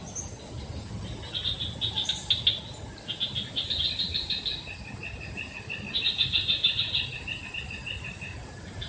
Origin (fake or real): real